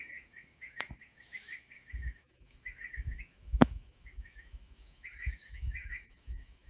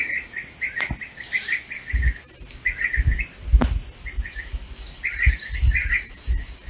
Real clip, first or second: second